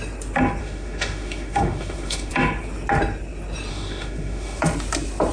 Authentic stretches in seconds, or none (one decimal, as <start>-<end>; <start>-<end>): 0.0-0.6; 2.3-3.7; 4.6-5.3